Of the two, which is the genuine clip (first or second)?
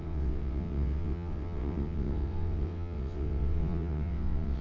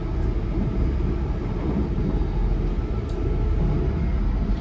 second